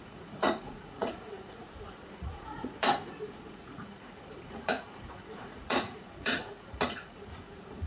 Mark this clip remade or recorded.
remade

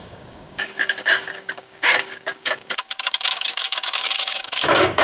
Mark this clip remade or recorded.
remade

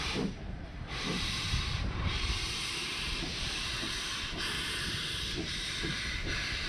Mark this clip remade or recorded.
remade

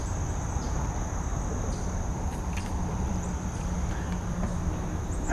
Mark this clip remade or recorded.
recorded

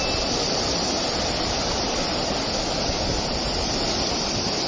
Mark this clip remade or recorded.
recorded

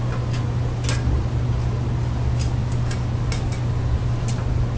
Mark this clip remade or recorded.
recorded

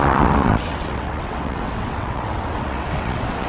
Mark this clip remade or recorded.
remade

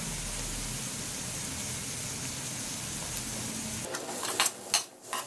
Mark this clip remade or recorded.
recorded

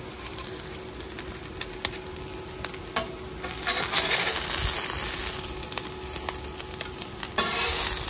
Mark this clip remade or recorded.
recorded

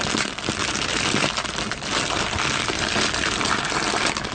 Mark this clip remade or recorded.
recorded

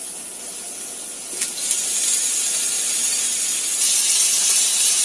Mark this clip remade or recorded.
recorded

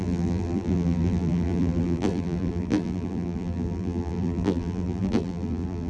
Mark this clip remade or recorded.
remade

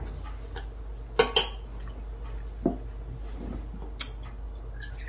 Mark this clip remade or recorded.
recorded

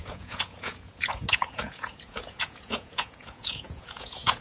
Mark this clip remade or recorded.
remade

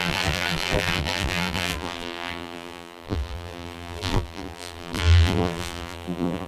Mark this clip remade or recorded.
remade